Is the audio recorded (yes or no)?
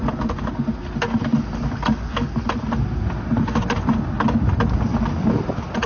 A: yes